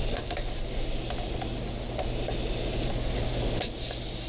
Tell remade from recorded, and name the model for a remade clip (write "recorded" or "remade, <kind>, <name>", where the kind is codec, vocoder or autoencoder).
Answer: recorded